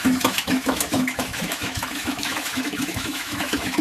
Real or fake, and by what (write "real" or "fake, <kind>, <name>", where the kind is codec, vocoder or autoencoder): fake, autoencoder, DAC-VAE